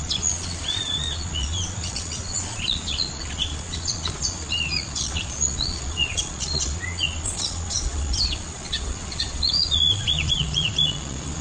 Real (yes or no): no